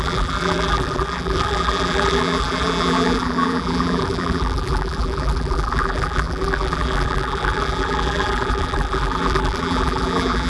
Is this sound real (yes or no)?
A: no